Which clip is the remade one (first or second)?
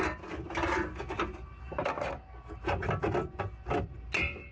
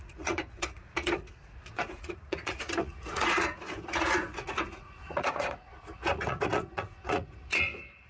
second